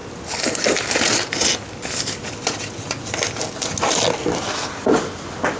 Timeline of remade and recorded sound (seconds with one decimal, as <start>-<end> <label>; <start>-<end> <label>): 0.0-5.6 recorded